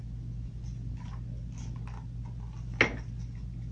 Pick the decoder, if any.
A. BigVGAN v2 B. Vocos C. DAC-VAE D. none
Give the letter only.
D